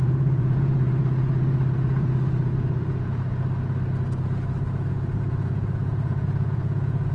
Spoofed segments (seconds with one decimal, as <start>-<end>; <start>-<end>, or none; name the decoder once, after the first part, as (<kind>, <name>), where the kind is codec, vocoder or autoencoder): 0.0-3.3 (vocoder, Vocos); 4.9-7.1